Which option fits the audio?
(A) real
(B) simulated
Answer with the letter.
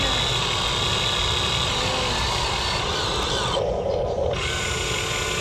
A